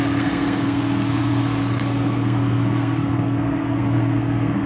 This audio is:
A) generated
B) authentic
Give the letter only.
A